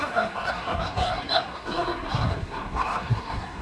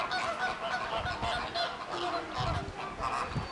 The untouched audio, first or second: second